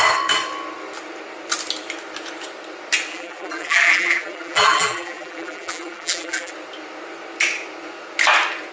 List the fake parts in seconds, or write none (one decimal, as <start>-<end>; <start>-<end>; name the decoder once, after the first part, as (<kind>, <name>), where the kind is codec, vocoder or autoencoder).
3.1-6.5 (vocoder, BigVGAN v2)